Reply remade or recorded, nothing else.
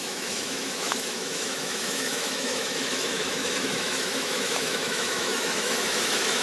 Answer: remade